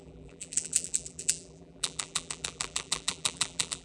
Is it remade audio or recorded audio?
remade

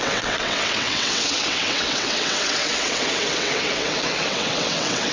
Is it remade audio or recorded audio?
remade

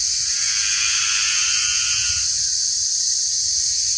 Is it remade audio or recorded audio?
recorded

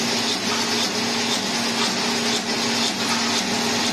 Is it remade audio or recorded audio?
recorded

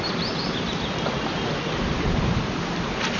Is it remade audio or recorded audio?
recorded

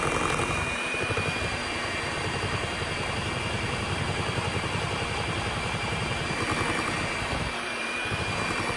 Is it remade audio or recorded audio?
remade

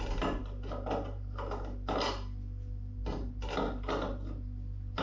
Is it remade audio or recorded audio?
recorded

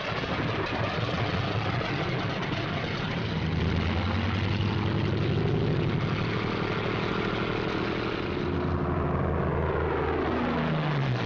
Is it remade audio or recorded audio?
recorded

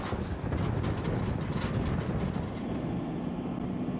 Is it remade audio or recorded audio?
recorded